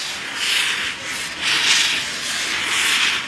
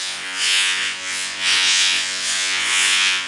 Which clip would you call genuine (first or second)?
first